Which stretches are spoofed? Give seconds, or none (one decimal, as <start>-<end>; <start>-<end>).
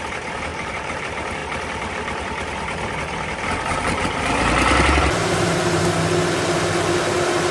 0.5-1.0; 3.7-4.4; 5.2-5.8